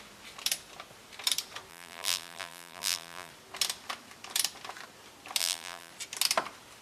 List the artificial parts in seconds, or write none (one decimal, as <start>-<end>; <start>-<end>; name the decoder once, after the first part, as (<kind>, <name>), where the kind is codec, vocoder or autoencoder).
1.7-3.3 (vocoder, BigVGAN v2); 5.4-5.9